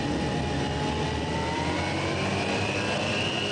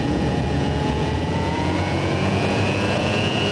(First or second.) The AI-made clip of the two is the second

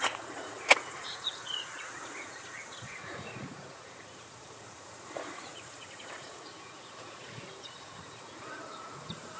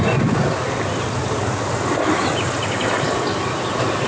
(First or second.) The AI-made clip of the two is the first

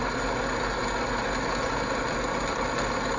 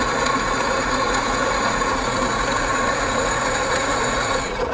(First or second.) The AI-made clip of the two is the second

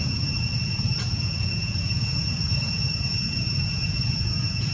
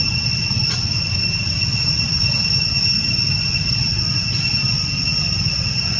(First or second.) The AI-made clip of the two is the first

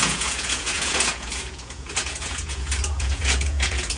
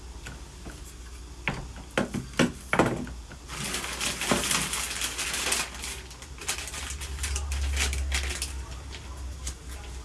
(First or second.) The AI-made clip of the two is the first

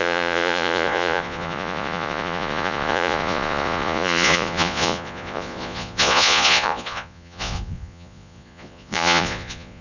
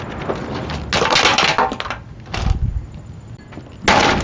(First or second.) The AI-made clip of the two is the first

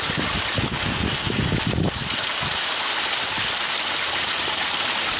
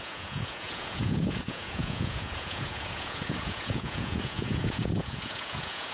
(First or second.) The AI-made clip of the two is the second